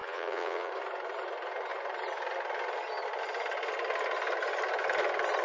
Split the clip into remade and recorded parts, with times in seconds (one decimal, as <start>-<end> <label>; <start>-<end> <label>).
0.0-0.7 remade; 0.7-5.4 recorded